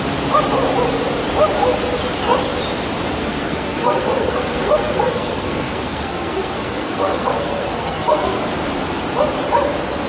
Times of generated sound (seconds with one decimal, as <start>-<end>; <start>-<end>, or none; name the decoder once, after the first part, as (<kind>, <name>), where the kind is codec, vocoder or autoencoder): 3.2-8.4 (codec, SNAC)